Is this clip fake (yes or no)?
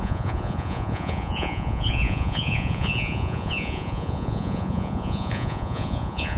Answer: yes